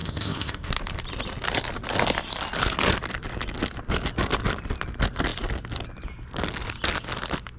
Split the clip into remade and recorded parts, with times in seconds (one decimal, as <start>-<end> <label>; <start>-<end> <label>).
0.0-0.7 remade; 0.7-7.6 recorded